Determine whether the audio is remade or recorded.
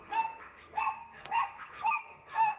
remade